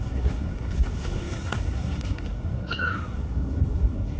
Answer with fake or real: fake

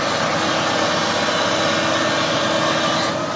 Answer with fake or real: real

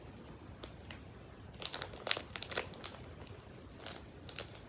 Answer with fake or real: real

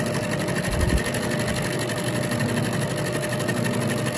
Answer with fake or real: real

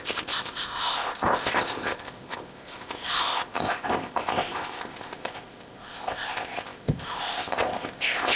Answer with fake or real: fake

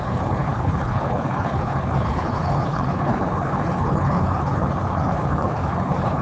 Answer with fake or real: fake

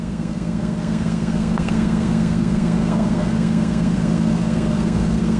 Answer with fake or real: fake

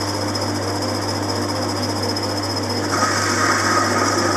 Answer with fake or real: real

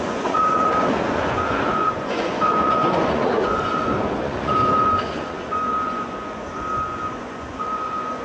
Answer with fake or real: fake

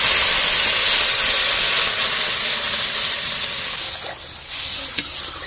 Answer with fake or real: real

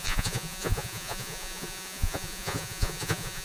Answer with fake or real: fake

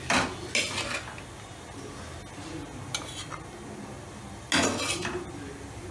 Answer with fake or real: real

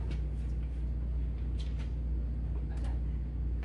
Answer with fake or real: real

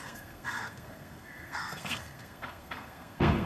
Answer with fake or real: fake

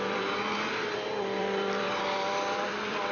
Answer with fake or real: fake